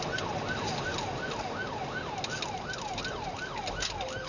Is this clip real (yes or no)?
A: yes